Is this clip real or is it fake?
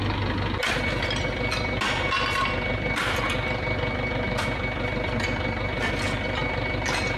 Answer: real